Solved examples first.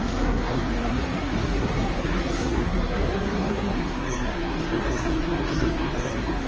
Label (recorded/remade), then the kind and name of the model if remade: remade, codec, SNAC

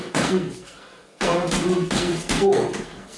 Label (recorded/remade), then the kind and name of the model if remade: remade, codec, SNAC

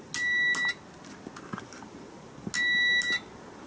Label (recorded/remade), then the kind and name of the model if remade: recorded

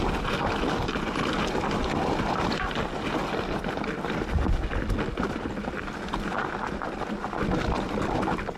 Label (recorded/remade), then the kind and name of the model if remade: recorded